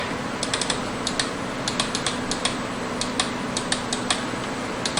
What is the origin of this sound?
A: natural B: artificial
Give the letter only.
A